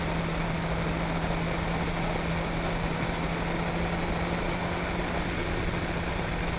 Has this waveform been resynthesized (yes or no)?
no